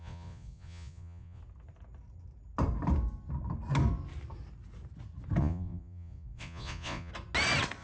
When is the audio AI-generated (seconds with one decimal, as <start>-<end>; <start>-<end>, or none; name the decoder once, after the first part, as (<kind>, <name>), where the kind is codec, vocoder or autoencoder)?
0.0-1.4 (vocoder, Vocos); 5.4-7.1